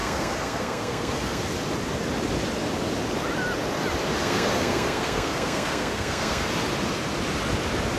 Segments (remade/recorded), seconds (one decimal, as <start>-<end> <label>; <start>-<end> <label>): 0.0-1.4 remade; 1.4-4.2 recorded; 4.2-6.5 remade; 6.5-8.0 recorded